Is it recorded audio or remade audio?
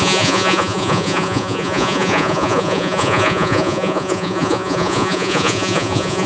remade